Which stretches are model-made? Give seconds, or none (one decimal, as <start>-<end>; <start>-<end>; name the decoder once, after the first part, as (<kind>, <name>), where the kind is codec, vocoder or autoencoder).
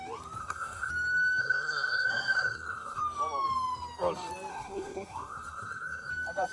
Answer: 0.4-0.9 (codec, SNAC); 1.4-3.0; 4.5-6.1